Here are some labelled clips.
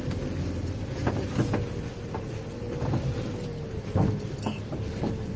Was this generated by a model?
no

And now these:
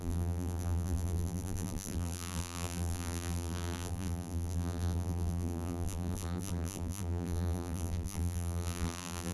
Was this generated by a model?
yes